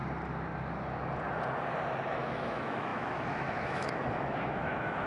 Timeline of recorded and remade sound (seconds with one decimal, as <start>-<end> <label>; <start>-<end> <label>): 0.0-2.1 recorded; 2.1-5.1 remade